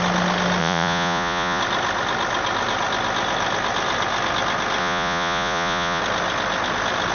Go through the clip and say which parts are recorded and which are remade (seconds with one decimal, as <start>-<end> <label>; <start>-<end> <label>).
0.0-0.6 recorded; 0.6-1.6 remade; 1.6-4.8 recorded; 4.8-6.0 remade; 6.0-7.1 recorded